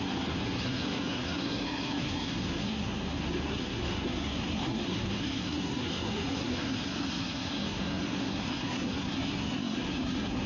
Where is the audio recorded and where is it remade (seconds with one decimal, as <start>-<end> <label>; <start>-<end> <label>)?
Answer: 0.0-10.5 remade

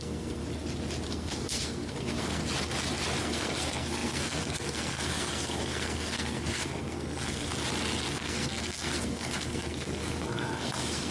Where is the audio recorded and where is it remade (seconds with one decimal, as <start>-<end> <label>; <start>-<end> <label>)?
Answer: 0.0-0.4 remade; 0.4-1.1 recorded; 1.1-2.4 remade; 2.4-3.2 recorded; 3.2-7.5 remade; 7.5-8.1 recorded; 8.1-11.1 remade